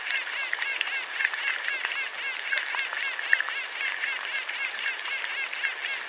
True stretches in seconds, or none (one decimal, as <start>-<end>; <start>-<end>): 2.1-3.6; 5.3-6.1